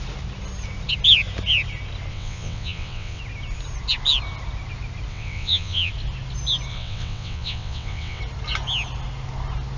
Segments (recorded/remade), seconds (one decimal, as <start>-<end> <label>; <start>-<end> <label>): 0.0-2.1 recorded; 2.1-3.2 remade; 3.2-5.1 recorded; 5.1-5.9 remade; 5.9-6.7 recorded; 6.7-8.2 remade; 8.2-9.8 recorded